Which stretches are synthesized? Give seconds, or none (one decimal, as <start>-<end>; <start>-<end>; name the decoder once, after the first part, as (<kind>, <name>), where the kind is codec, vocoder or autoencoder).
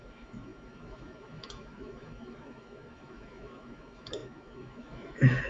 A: 0.0-5.5 (autoencoder, DAC-VAE)